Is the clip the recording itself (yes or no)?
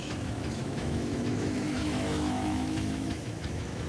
no